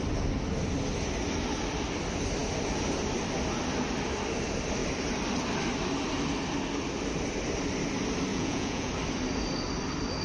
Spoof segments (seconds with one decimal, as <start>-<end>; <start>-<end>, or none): 8.3-8.9